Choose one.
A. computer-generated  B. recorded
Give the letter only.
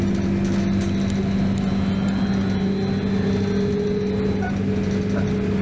B